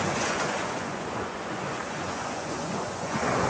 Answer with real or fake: fake